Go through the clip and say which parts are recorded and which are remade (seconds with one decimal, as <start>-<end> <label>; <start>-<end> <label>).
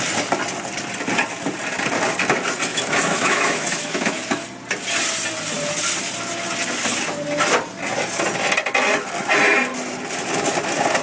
0.0-2.7 recorded; 2.7-4.4 remade; 4.4-11.0 recorded